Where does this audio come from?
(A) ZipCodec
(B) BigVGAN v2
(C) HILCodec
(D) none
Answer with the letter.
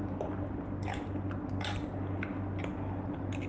D